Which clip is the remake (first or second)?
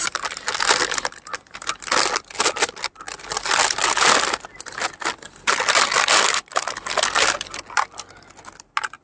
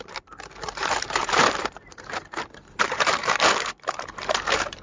second